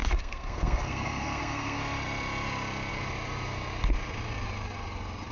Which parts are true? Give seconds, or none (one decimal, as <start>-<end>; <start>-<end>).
1.8-5.3